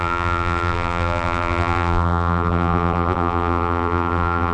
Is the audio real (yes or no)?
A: no